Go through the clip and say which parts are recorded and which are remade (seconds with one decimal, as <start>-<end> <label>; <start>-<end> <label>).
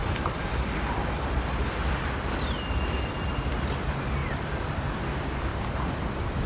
0.0-1.5 remade; 1.5-4.2 recorded; 4.2-5.0 remade; 5.0-6.5 recorded